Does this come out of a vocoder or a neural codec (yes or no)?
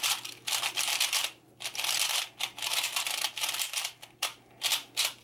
no